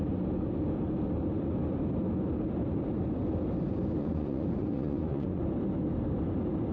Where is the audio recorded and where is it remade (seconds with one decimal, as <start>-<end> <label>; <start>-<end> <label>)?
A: 0.0-4.0 recorded; 4.0-5.4 remade; 5.4-6.7 recorded